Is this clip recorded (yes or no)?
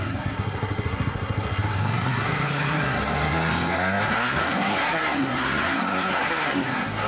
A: no